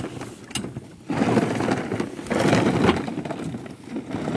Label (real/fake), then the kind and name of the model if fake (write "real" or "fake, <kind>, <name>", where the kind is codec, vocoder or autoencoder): real